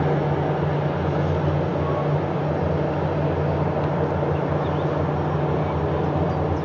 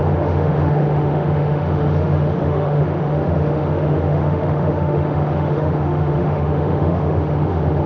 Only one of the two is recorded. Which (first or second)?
first